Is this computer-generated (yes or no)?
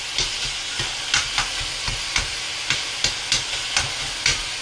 no